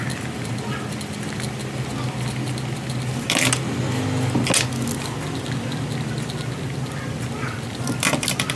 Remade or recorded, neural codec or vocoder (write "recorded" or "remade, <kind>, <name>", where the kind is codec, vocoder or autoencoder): recorded